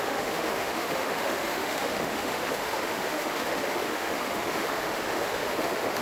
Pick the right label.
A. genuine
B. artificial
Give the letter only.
B